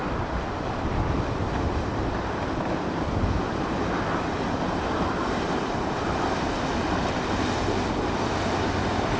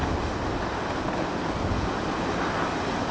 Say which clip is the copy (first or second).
first